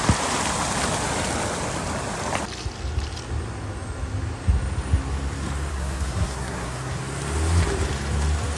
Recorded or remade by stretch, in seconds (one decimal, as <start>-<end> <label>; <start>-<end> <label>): 0.0-5.7 recorded; 5.7-7.0 remade; 7.0-8.6 recorded